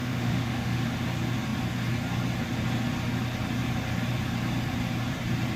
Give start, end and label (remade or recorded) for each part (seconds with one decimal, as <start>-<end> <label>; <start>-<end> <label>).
0.0-0.8 remade; 0.8-5.6 recorded